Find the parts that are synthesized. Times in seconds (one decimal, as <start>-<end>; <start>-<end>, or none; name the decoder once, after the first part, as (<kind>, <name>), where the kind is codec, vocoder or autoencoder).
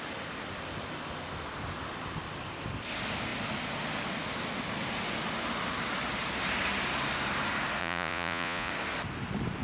7.8-8.7 (vocoder, Vocos)